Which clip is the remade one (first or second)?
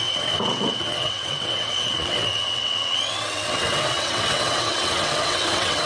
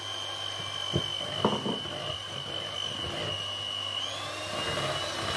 first